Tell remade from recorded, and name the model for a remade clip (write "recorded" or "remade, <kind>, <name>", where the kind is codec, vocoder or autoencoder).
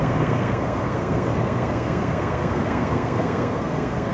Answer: remade, codec, SNAC